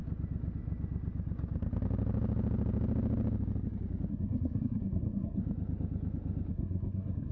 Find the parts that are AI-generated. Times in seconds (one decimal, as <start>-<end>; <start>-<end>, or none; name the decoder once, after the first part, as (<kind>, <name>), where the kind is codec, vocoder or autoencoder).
4.1-5.4 (codec, SNAC); 6.5-7.3